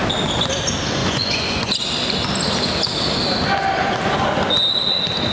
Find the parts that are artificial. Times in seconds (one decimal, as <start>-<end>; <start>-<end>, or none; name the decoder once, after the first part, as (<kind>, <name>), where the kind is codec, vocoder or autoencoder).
1.0-1.7 (vocoder, Vocos)